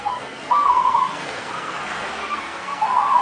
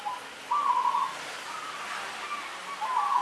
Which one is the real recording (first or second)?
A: second